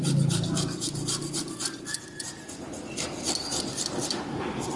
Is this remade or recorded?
recorded